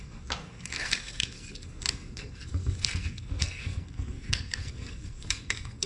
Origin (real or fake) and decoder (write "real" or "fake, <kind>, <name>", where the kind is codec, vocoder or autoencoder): fake, codec, SNAC